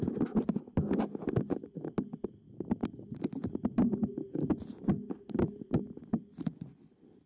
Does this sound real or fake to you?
real